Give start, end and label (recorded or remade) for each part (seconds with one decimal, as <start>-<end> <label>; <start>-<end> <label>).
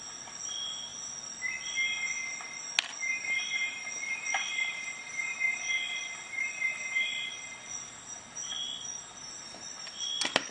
0.0-10.5 recorded